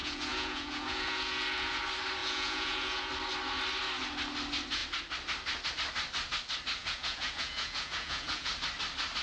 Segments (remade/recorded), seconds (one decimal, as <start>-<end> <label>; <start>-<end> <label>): 0.0-1.8 remade; 1.8-2.2 recorded; 2.2-3.1 remade; 3.1-6.8 recorded; 6.8-8.5 remade; 8.5-9.2 recorded